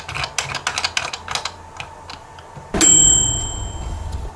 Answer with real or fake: real